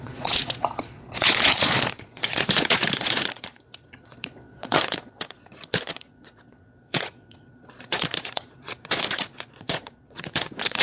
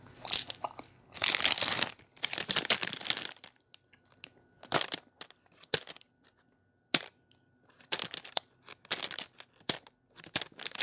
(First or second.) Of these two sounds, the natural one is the second